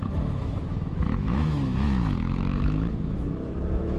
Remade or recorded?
remade